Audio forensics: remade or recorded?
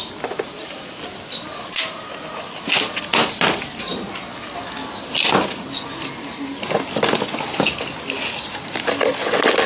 recorded